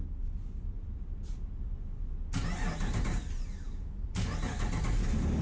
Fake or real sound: real